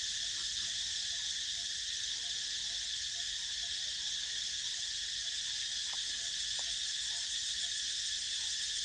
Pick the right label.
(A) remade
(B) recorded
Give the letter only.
B